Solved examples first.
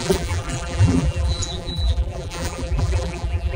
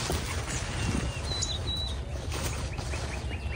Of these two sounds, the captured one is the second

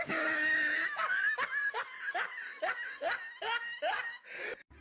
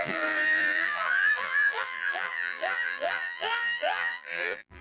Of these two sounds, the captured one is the first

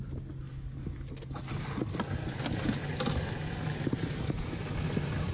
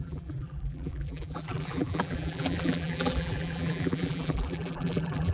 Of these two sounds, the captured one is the first